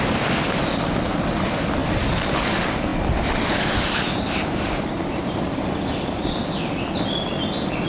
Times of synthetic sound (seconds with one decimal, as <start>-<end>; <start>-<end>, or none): none